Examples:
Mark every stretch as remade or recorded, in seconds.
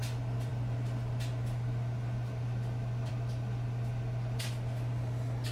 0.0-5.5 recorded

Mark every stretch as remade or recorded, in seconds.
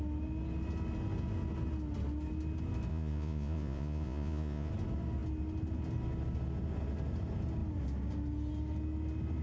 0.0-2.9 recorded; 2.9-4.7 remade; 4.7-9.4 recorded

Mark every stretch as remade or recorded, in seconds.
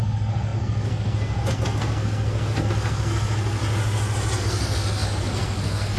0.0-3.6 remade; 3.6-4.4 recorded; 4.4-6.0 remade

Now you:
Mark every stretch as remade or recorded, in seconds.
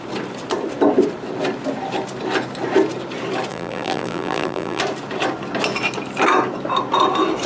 0.0-3.5 recorded; 3.5-4.8 remade; 4.8-7.5 recorded